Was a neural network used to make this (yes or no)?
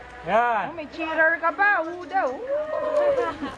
no